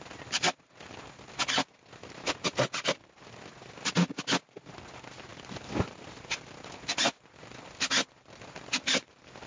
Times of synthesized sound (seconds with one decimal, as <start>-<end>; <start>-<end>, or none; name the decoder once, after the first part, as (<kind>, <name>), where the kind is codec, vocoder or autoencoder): none